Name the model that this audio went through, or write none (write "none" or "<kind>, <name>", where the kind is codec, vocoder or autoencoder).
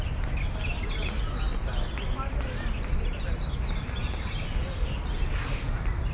none